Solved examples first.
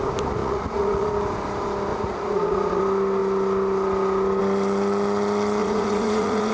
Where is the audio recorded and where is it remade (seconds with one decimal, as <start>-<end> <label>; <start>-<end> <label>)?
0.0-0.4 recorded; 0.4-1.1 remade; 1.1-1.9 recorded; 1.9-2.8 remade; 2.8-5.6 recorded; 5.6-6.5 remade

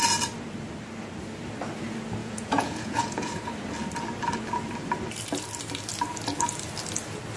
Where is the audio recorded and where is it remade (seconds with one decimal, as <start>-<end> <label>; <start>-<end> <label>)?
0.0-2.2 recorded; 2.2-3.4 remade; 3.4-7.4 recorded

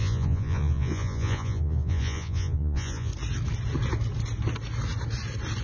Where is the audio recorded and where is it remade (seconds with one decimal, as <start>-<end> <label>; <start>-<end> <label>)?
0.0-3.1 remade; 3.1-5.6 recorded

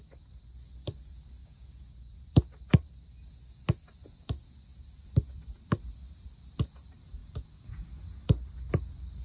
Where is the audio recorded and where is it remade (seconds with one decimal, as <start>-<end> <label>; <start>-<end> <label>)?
0.0-1.4 recorded; 1.4-2.2 remade; 2.2-7.2 recorded; 7.2-7.9 remade; 7.9-9.2 recorded

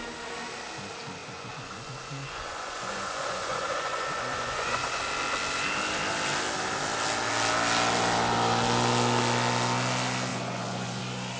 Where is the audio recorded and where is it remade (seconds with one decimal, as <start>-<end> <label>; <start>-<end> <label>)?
0.0-1.2 recorded; 1.2-5.0 remade; 5.0-10.3 recorded; 10.3-11.0 remade; 11.0-11.4 recorded

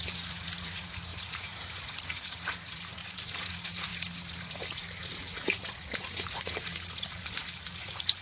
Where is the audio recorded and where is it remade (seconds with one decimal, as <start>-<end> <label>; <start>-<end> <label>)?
0.0-8.2 remade